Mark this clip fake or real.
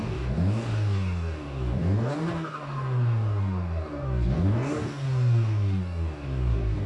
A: fake